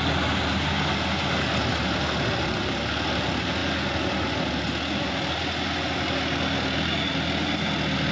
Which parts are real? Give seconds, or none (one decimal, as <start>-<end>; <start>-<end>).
0.0-8.1